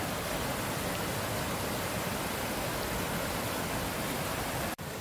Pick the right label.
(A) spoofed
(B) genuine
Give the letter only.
A